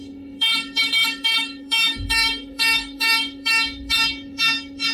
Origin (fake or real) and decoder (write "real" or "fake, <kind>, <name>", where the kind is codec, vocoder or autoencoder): fake, autoencoder, DAC-VAE